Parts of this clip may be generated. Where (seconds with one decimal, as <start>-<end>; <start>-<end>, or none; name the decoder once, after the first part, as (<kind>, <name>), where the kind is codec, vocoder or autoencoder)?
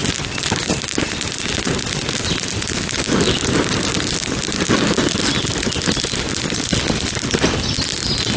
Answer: none